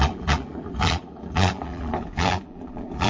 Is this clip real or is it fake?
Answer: fake